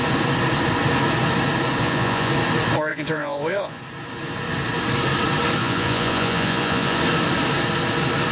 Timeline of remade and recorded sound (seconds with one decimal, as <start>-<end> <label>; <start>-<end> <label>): 0.0-1.8 recorded; 1.8-2.3 remade; 2.3-2.9 recorded; 2.9-3.8 remade; 3.8-5.6 recorded; 5.6-7.0 remade; 7.0-8.3 recorded